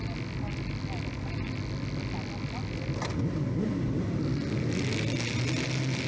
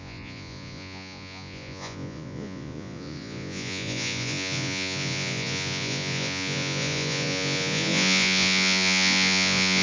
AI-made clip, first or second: second